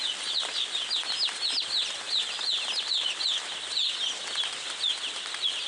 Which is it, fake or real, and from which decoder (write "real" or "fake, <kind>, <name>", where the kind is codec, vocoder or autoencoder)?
real